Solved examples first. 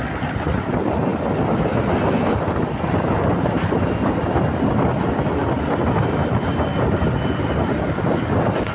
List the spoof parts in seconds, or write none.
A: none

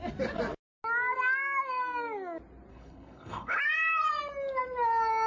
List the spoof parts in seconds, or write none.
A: 2.7-3.6 (codec, HILCodec)

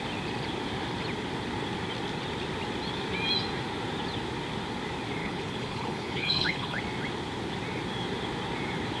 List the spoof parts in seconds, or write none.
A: 5.2-6.8 (codec, HILCodec)

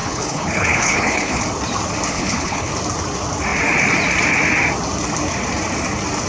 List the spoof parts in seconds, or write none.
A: 0.0-1.4 (codec, HILCodec); 2.1-2.7

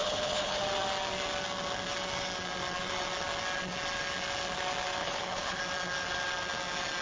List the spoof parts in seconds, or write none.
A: 0.0-0.6 (codec, HILCodec); 5.0-5.6

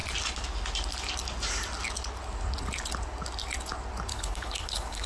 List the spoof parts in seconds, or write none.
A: 4.1-5.1 (codec, HILCodec)

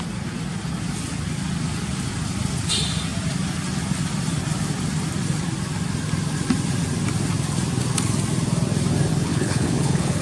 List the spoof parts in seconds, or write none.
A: 9.1-10.2 (codec, HILCodec)